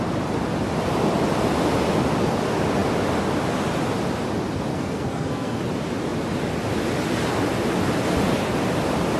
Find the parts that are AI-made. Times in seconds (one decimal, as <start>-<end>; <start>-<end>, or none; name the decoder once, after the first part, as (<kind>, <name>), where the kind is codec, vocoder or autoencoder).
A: 4.7-5.6 (codec, SNAC)